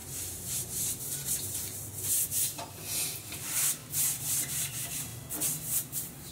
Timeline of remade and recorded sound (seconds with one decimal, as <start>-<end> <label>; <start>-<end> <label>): 0.0-1.9 remade; 1.9-2.9 recorded; 2.9-3.8 remade; 3.8-4.5 recorded; 4.5-5.1 remade; 5.1-6.3 recorded